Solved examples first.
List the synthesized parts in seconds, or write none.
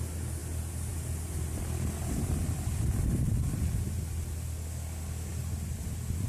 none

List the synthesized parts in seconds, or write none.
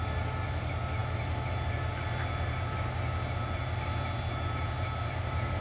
none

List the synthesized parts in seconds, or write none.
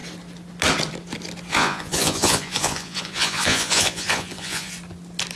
1.5-4.7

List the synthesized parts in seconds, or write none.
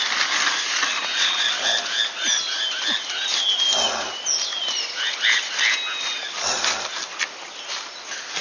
none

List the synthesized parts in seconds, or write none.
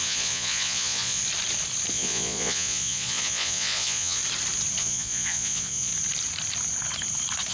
0.0-1.2; 1.9-4.2; 4.8-5.9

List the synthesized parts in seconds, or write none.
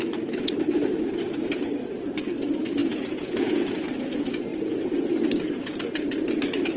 2.8-3.9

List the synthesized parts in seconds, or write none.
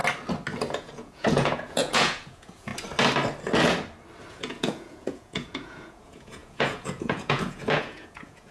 0.7-2.7; 4.3-8.5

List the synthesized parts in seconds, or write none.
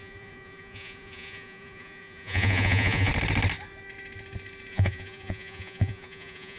0.0-3.1; 4.7-6.6